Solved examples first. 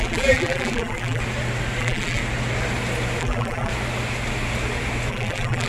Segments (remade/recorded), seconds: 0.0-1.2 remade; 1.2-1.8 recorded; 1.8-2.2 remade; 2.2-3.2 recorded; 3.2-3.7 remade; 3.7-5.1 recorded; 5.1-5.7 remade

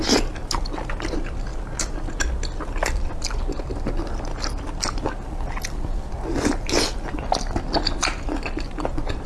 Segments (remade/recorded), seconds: 0.0-9.3 recorded